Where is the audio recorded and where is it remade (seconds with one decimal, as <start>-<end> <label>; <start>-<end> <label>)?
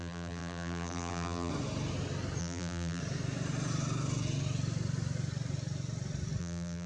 0.0-1.5 remade; 1.5-2.4 recorded; 2.4-3.0 remade; 3.0-6.4 recorded; 6.4-6.9 remade